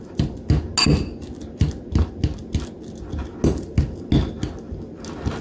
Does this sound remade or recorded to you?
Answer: recorded